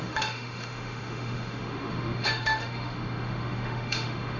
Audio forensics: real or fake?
fake